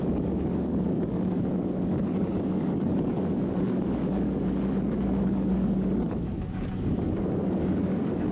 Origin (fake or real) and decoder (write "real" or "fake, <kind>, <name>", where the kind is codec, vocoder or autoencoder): fake, codec, DAC